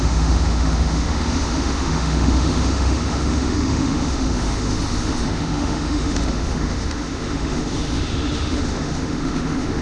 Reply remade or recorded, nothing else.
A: remade